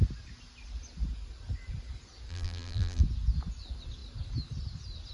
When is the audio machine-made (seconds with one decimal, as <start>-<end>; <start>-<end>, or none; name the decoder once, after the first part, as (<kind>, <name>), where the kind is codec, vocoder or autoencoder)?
2.3-3.0 (vocoder, BigVGAN v2)